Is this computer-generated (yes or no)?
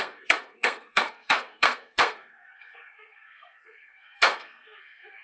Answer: yes